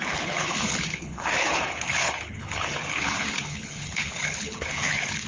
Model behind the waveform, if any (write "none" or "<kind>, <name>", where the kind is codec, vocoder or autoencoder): codec, HILCodec